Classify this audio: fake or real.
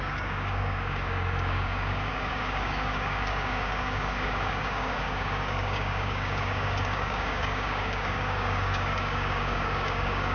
fake